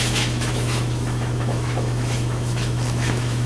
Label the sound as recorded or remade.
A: remade